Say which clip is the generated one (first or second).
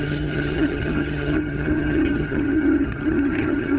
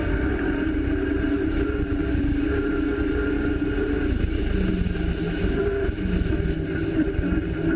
first